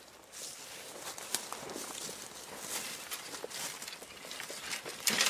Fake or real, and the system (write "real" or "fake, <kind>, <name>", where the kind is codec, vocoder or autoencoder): real